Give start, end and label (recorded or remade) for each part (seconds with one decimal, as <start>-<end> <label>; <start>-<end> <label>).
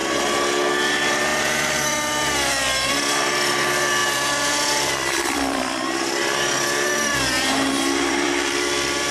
0.0-0.9 recorded; 0.9-9.1 remade